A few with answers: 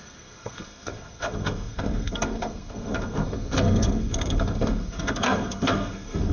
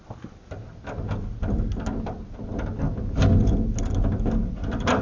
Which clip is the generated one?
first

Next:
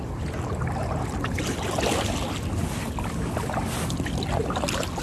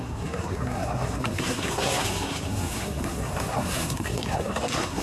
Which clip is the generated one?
second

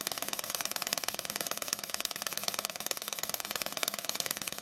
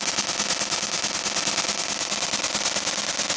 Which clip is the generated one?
first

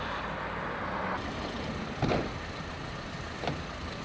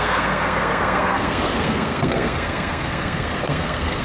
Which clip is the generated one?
second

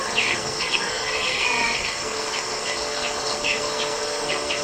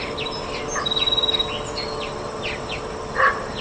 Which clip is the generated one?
first